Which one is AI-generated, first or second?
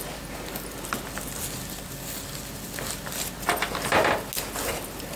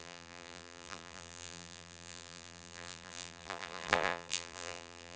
second